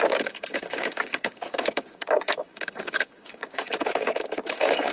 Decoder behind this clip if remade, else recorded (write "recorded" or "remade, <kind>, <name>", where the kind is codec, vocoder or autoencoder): remade, codec, DAC